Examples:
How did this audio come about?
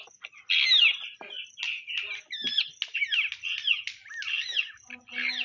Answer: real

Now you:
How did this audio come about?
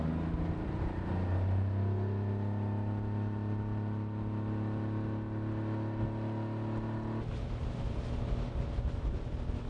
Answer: real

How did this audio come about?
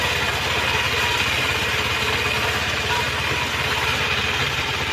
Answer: real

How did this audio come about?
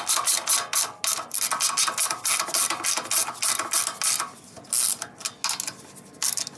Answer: real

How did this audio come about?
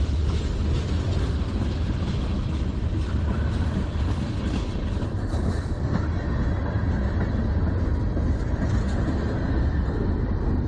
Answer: real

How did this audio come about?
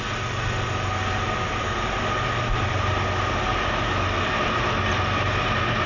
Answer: real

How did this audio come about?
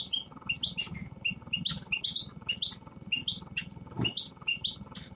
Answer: real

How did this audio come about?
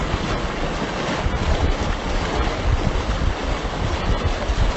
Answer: real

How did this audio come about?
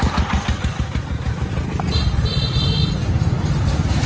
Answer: real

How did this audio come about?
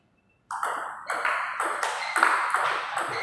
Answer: real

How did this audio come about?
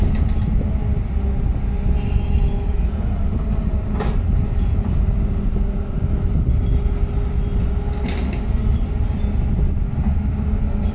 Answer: real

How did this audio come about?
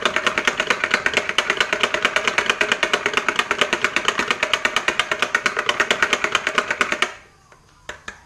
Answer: real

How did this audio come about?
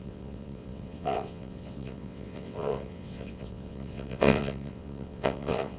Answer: fake